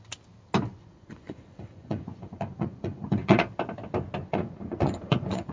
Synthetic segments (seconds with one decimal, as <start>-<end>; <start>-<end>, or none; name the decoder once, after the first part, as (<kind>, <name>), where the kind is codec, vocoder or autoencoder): 0.7-3.5 (vocoder, Vocos); 4.2-5.5